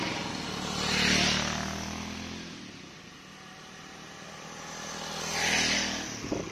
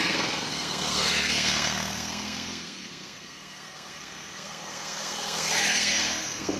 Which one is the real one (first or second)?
first